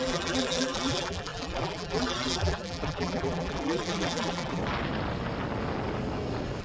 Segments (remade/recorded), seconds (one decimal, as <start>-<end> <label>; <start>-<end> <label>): 0.0-4.6 remade; 4.6-6.6 recorded